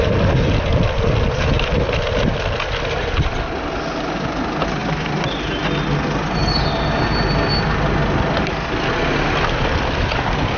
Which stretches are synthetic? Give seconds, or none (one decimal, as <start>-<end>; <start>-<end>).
none